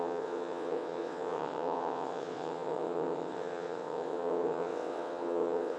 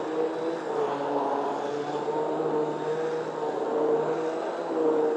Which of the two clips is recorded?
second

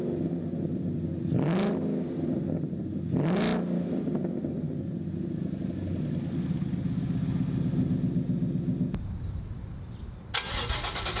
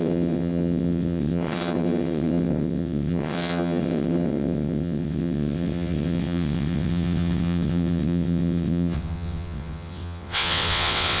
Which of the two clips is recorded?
first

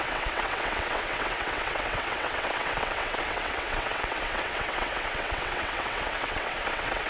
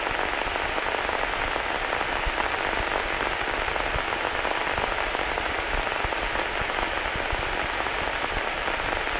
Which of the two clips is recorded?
second